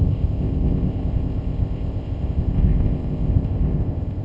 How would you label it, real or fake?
fake